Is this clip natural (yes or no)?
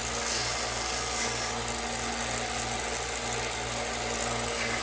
yes